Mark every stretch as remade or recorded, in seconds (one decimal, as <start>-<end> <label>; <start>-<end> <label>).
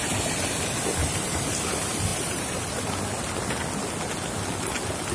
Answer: 0.0-1.0 recorded; 1.0-1.6 remade; 1.6-2.1 recorded; 2.1-2.9 remade; 2.9-5.1 recorded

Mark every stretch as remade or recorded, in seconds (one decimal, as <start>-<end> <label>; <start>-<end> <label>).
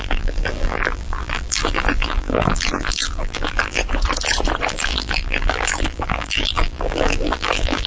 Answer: 0.0-3.8 remade; 3.8-4.7 recorded; 4.7-7.9 remade